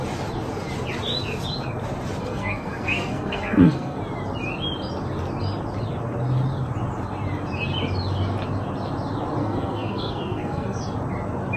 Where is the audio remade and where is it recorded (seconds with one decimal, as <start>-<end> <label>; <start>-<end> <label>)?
0.0-2.2 recorded; 2.2-4.0 remade; 4.0-9.4 recorded; 9.4-10.8 remade; 10.8-11.6 recorded